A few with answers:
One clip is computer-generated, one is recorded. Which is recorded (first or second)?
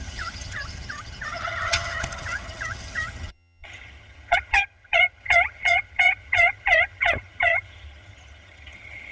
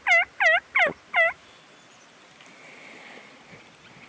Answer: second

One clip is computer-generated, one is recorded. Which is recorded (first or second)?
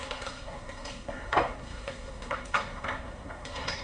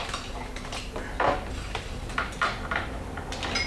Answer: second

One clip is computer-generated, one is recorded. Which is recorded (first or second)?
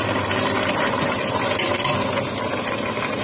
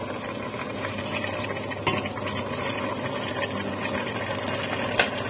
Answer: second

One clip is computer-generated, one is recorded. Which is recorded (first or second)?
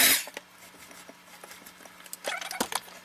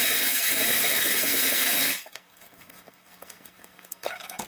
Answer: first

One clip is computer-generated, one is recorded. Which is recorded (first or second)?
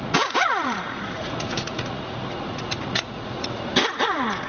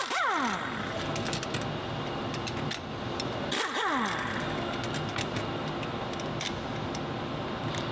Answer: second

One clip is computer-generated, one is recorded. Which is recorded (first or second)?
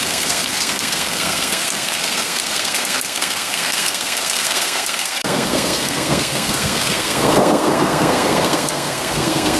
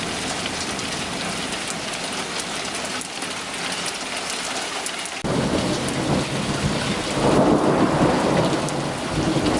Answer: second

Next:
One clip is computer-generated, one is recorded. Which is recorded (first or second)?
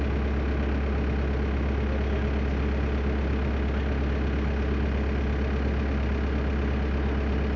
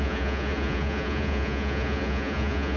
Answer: first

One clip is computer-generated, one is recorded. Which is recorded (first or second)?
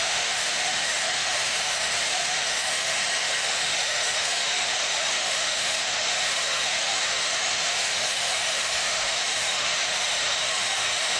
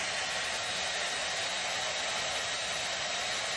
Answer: second